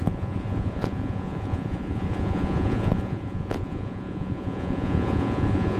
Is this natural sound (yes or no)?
no